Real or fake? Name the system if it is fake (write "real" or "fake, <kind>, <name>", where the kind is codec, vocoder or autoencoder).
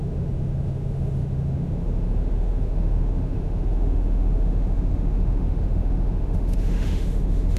fake, autoencoder, DAC-VAE